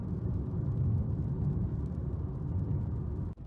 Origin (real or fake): real